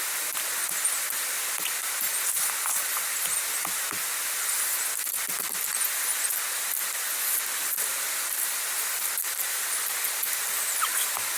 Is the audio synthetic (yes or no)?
no